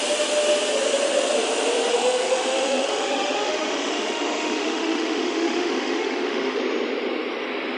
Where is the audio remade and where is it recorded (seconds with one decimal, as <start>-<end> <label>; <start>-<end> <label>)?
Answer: 0.0-1.9 recorded; 1.9-6.6 remade; 6.6-7.8 recorded